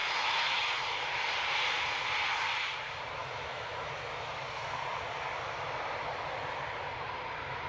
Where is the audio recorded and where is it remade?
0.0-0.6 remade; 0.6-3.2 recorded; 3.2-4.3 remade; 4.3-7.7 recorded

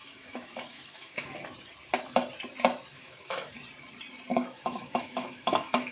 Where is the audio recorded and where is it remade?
0.0-1.4 remade; 1.4-2.9 recorded; 2.9-3.5 remade; 3.5-4.3 recorded; 4.3-5.9 remade

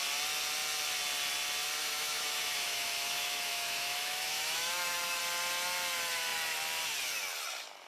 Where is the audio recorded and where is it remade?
0.0-1.8 recorded; 1.8-5.2 remade; 5.2-7.9 recorded

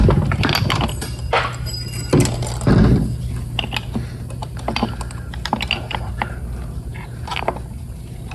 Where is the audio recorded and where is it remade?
0.0-8.3 recorded

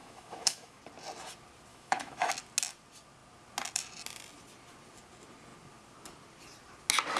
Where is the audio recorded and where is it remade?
0.0-0.8 remade; 0.8-1.7 recorded; 1.7-2.3 remade; 2.3-7.2 recorded

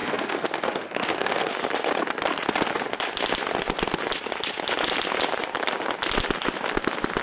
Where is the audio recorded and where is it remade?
0.0-1.5 remade; 1.5-7.2 recorded

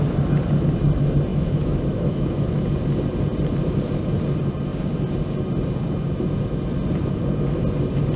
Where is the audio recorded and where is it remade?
0.0-1.3 recorded; 1.3-2.6 remade; 2.6-8.2 recorded